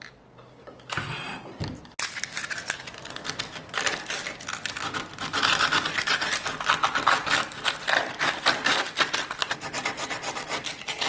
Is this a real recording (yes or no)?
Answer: yes